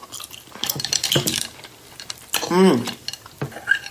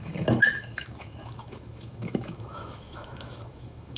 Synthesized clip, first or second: second